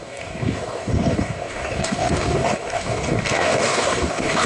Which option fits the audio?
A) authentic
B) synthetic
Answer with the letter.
B